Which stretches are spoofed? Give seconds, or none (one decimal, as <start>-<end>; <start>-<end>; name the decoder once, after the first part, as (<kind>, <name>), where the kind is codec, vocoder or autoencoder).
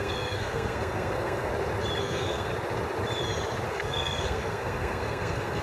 0.0-1.5 (codec, SNAC); 2.0-2.5; 3.7-5.6